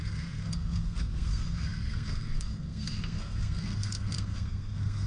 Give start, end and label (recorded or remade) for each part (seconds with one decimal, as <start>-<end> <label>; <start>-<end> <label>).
0.0-5.1 remade